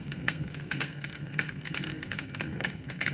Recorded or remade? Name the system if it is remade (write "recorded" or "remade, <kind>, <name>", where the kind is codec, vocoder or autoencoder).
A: remade, codec, SNAC